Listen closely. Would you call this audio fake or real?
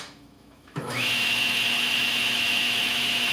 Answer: fake